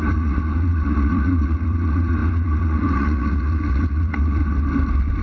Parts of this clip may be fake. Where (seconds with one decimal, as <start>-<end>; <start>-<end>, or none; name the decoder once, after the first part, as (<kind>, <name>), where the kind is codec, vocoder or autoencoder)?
0.0-4.4 (vocoder, Vocos)

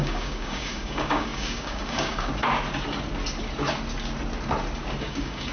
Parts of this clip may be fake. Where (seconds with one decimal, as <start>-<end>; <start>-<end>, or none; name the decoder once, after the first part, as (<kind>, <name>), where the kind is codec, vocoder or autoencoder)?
0.0-2.3 (codec, DAC); 5.0-5.5

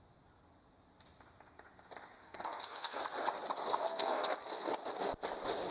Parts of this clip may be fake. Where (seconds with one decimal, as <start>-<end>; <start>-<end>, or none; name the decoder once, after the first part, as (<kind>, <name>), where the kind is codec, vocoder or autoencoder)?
2.2-3.0 (codec, SNAC); 3.9-4.7

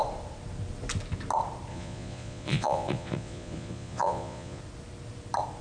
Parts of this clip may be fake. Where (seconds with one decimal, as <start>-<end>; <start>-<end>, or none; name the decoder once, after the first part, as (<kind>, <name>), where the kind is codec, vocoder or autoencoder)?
1.7-4.6 (vocoder, Vocos)

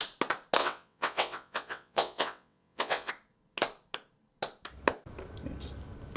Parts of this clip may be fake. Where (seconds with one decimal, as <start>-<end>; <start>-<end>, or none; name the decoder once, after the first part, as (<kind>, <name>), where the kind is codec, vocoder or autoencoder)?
0.6-3.1 (vocoder, WaveNeXt)

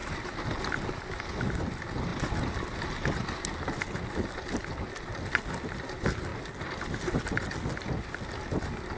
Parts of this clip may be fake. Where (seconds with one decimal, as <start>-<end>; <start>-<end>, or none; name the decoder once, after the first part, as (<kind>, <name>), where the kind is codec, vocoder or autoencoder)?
none